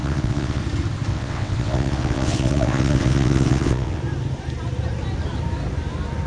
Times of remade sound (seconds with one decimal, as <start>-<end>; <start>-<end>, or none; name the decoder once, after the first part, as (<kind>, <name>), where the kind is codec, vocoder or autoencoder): 0.0-0.6 (vocoder, WaveNeXt); 1.1-4.0